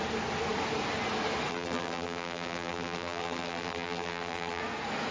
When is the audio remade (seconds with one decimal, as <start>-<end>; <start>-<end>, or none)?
1.5-4.6